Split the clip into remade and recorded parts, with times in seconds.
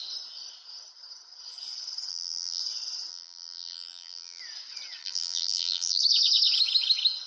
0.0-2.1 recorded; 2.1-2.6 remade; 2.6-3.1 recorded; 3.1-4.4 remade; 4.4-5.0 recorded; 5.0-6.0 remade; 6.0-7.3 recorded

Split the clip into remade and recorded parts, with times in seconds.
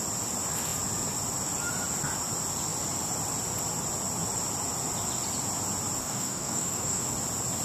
0.0-6.0 recorded; 6.0-7.0 remade; 7.0-7.6 recorded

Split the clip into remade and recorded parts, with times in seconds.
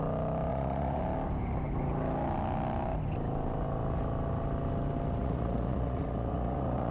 0.0-0.5 recorded; 0.5-1.0 remade; 1.0-5.2 recorded; 5.2-6.9 remade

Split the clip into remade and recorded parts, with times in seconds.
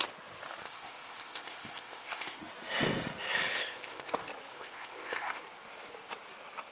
0.0-0.6 recorded; 0.6-2.4 remade; 2.4-3.5 recorded; 3.5-4.1 remade; 4.1-4.5 recorded; 4.5-5.4 remade; 5.4-6.7 recorded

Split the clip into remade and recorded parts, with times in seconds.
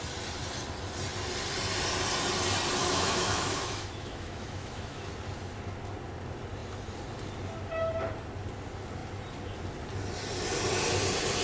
0.0-2.8 recorded; 2.8-5.1 remade; 5.1-11.4 recorded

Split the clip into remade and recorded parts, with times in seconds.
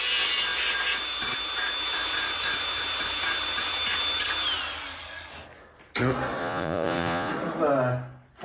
0.0-6.4 recorded; 6.4-7.3 remade; 7.3-8.4 recorded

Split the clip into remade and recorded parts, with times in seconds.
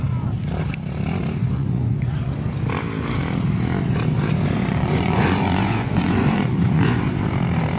0.0-1.4 recorded; 1.4-2.3 remade; 2.3-4.6 recorded; 4.6-7.0 remade; 7.0-7.8 recorded